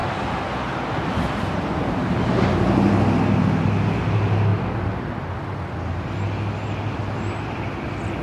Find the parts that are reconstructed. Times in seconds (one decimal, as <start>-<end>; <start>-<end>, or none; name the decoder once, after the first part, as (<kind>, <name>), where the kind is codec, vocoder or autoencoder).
none